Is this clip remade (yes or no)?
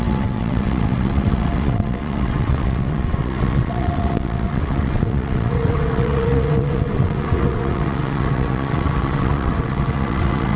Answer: yes